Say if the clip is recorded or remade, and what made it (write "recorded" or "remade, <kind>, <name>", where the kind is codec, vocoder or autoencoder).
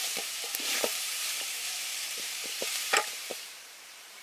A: remade, vocoder, BigVGAN v2